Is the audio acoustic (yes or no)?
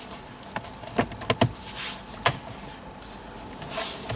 yes